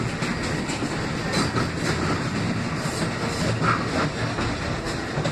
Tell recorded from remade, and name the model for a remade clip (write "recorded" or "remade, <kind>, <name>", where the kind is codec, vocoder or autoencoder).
recorded